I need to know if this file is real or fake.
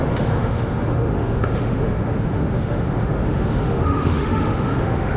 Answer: fake